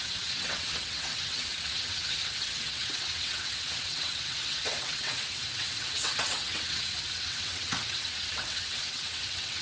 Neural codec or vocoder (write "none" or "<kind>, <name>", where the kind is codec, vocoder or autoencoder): vocoder, WaveNeXt